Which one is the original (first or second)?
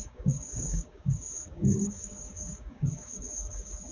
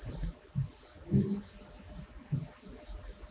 second